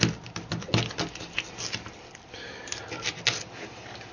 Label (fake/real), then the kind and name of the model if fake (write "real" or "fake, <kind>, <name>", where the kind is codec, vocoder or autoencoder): real